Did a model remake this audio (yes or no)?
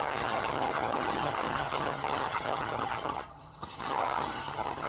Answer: yes